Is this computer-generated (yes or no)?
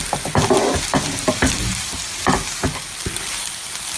no